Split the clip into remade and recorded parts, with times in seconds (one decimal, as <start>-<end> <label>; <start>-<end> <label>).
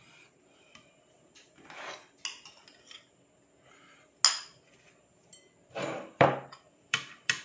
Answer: 0.0-5.3 recorded; 5.3-7.4 remade